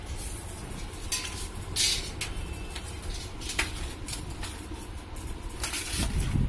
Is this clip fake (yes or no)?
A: no